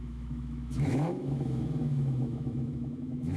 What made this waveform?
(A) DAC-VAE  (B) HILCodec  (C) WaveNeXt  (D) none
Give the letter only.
A